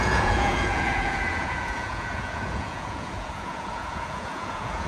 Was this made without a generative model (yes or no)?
no